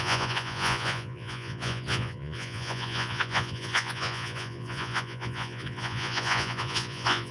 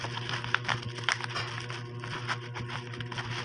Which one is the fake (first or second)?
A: first